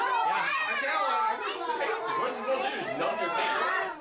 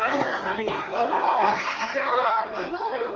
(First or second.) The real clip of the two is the first